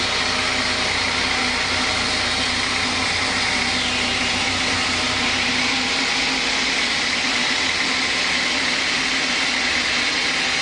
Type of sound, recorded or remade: recorded